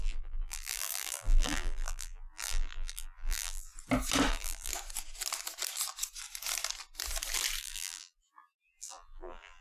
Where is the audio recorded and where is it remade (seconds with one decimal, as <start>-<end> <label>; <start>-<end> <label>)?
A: 0.0-3.7 remade; 3.7-4.3 recorded; 4.3-4.7 remade; 4.7-7.6 recorded; 7.6-9.6 remade